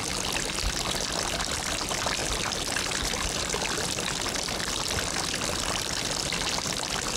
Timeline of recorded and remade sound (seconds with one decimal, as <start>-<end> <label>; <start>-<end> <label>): 0.0-2.2 recorded; 2.2-3.1 remade; 3.1-7.2 recorded